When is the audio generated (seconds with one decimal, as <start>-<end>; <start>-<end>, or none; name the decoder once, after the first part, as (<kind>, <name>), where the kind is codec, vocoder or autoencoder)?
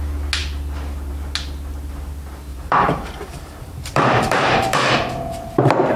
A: 2.5-4.9 (vocoder, BigVGAN v2)